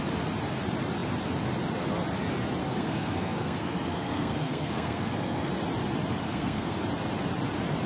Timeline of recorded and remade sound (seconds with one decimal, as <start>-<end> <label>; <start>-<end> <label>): 0.0-2.6 recorded; 2.6-5.5 remade; 5.5-6.2 recorded; 6.2-6.8 remade; 6.8-7.9 recorded